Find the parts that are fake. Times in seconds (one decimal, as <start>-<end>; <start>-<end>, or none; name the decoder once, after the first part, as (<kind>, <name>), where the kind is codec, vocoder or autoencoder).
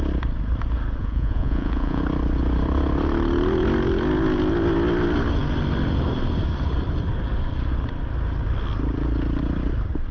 1.0-2.0 (vocoder, Vocos)